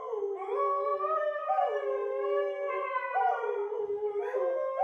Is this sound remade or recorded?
recorded